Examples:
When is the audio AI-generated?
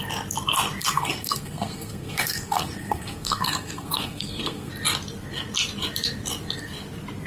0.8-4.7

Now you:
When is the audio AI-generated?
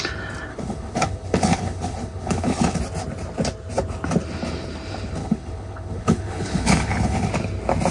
0.5-2.8; 5.2-7.3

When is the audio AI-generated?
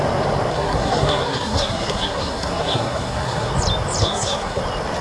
0.5-3.5; 4.0-4.6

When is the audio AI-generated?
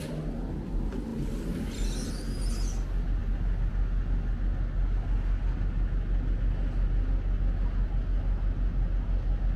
none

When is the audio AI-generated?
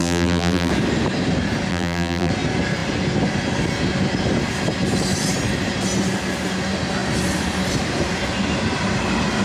0.0-0.7; 1.7-2.3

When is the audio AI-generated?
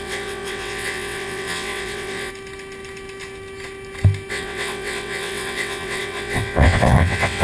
0.0-2.3; 4.3-7.4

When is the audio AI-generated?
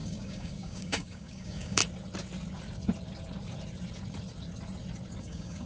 0.0-1.8; 5.2-5.7